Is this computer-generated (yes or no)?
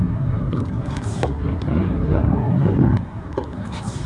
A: yes